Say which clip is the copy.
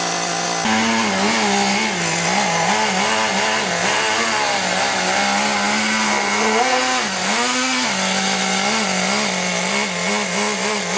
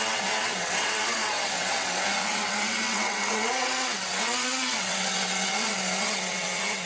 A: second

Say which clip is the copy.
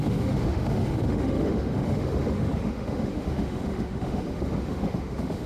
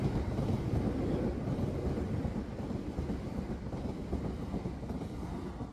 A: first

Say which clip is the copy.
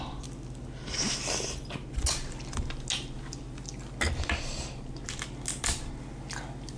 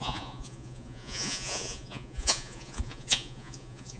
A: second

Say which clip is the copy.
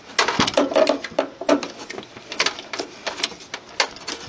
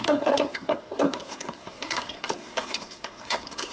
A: second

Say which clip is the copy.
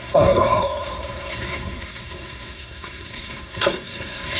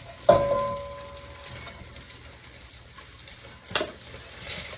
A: first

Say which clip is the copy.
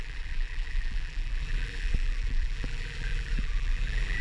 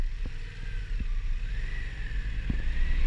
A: first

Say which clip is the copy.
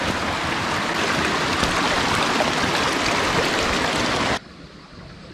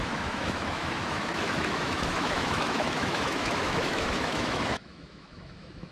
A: second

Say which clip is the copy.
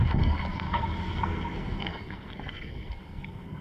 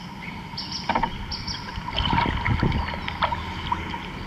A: first